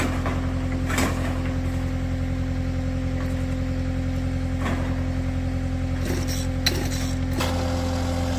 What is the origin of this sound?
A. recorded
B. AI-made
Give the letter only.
A